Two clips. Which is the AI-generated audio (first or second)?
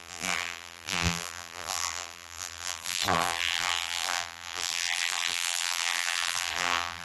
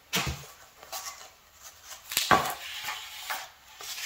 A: first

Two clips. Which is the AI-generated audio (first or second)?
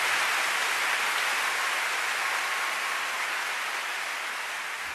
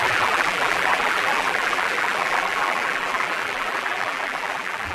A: second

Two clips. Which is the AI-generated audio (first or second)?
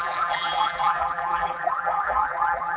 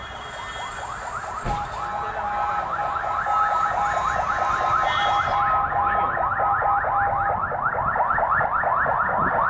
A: first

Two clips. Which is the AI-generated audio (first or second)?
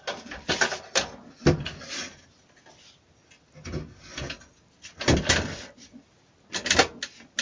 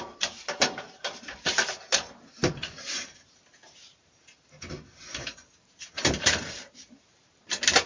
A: second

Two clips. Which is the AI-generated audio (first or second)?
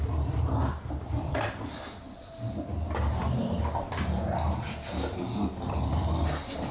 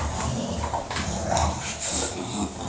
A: second